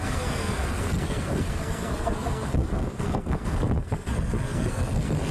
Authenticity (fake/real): fake